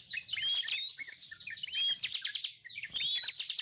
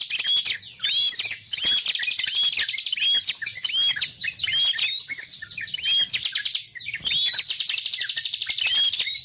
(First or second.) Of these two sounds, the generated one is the first